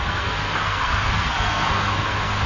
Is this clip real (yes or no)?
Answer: no